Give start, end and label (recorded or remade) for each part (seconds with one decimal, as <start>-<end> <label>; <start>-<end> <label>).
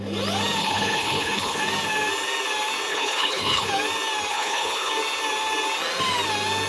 0.0-0.6 recorded; 0.6-1.6 remade; 1.6-2.9 recorded; 2.9-3.7 remade; 3.7-4.3 recorded; 4.3-4.9 remade; 4.9-6.7 recorded